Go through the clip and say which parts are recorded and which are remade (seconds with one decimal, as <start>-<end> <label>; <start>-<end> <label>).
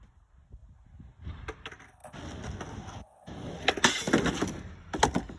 0.0-5.4 recorded